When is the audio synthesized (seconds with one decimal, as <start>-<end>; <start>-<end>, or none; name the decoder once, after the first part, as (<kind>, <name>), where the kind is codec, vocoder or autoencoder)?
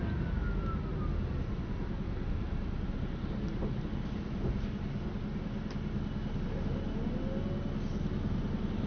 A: none